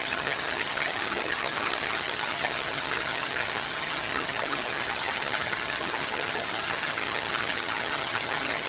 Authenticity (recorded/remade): remade